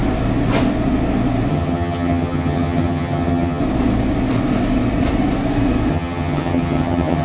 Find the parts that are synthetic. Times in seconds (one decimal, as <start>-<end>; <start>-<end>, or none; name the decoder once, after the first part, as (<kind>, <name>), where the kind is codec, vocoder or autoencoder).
1.5-3.6 (vocoder, HiFi-GAN); 5.9-7.2